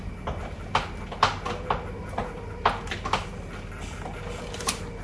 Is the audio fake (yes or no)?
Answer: no